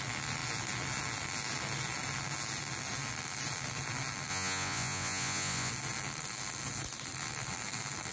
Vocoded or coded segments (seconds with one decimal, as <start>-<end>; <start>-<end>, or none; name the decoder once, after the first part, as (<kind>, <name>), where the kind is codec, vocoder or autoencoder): 4.3-5.7 (vocoder, Vocos)